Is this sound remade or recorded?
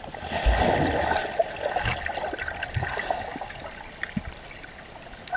recorded